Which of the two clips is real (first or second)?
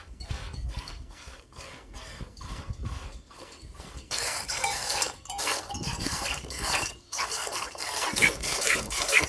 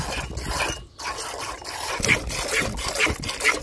second